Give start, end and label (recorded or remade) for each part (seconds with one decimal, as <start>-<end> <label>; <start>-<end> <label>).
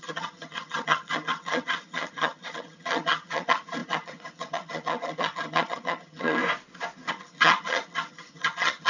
0.0-6.4 remade; 6.4-7.1 recorded; 7.1-8.9 remade